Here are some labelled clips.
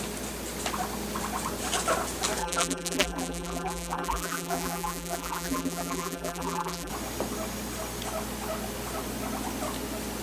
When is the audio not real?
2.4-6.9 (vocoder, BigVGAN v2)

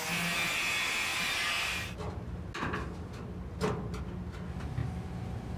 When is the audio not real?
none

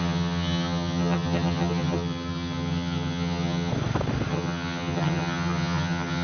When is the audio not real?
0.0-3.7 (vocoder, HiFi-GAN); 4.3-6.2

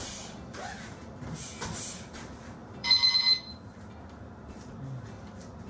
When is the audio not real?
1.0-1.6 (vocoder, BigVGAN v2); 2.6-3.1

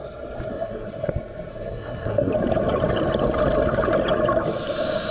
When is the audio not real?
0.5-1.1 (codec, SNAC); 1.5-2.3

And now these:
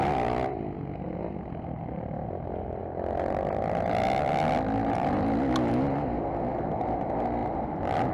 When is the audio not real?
none

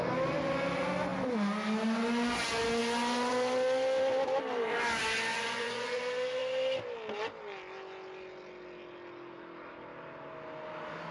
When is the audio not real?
5.3-6.0 (vocoder, Vocos)